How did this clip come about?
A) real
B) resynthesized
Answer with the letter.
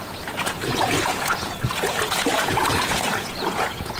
B